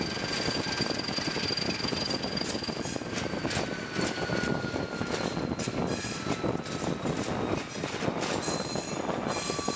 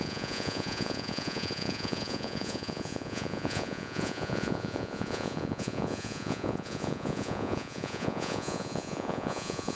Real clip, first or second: first